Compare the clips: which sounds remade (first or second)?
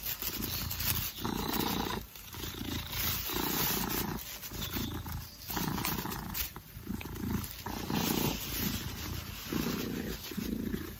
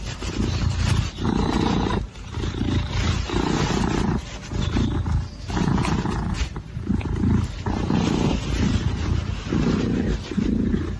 second